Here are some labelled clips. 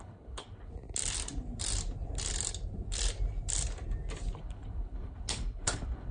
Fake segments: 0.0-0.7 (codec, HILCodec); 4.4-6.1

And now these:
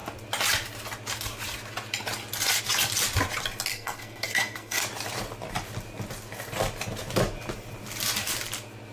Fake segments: 3.7-4.8 (codec, SNAC)

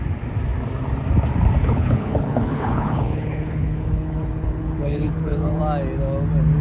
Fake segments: 1.6-5.6 (codec, HILCodec)

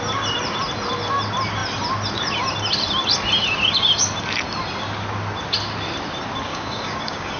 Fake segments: 6.5-7.4 (codec, DAC)

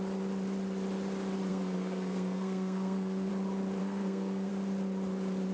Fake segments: 1.5-3.3 (codec, SNAC); 3.8-4.5